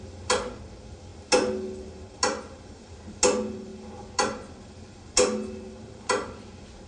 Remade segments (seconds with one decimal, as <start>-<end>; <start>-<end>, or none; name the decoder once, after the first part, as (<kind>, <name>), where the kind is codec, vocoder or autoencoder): none